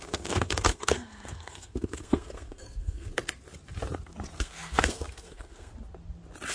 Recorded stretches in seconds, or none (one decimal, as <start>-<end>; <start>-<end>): 3.1-4.4; 5.7-6.5